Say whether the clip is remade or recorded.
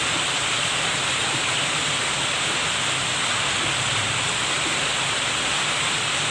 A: recorded